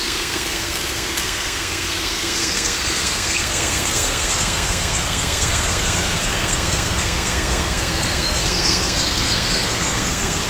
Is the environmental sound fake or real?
fake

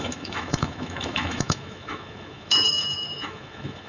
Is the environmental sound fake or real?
fake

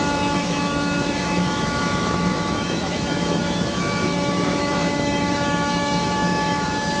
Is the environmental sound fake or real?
fake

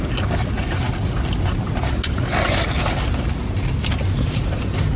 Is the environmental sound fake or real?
real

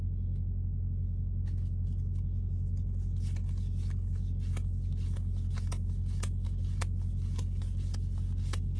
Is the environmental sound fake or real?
real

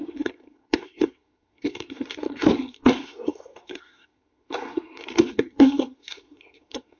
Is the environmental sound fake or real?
fake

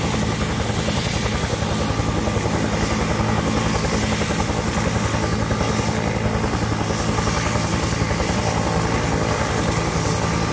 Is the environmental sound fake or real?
real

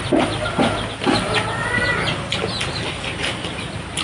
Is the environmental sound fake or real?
real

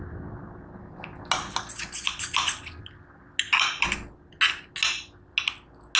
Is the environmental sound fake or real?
real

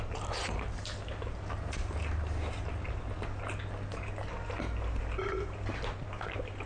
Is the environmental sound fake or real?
real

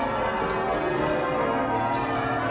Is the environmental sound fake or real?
real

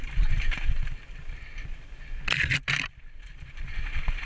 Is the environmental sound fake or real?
real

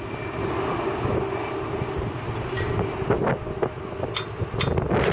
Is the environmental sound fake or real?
real